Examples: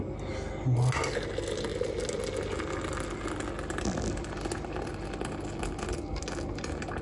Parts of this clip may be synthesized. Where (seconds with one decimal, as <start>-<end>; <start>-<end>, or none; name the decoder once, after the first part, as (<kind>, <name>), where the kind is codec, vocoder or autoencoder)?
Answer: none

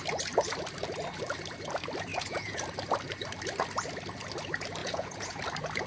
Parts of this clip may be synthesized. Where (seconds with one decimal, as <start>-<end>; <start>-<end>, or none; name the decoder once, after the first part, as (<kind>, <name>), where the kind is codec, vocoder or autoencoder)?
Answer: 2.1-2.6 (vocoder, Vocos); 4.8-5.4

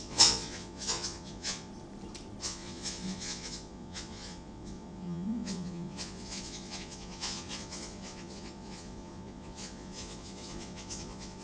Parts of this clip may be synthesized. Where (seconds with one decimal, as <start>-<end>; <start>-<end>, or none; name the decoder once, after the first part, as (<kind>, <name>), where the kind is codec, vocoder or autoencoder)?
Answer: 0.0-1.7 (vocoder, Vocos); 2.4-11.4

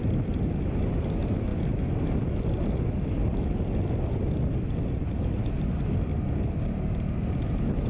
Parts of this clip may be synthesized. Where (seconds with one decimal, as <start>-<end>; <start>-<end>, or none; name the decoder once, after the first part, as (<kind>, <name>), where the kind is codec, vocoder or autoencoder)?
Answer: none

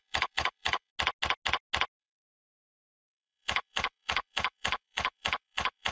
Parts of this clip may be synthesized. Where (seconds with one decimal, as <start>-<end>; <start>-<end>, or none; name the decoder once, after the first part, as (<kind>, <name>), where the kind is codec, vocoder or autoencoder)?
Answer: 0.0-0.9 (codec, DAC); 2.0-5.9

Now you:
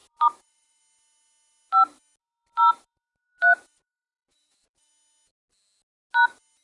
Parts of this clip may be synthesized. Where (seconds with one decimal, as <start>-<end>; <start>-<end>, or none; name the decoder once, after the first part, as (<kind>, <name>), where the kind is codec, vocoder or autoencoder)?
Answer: 0.0-0.8 (vocoder, BigVGAN v2); 2.2-4.9